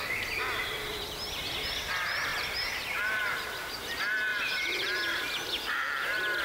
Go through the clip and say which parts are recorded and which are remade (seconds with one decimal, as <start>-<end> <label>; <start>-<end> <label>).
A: 0.0-2.3 recorded; 2.3-3.7 remade; 3.7-4.3 recorded; 4.3-5.2 remade; 5.2-6.4 recorded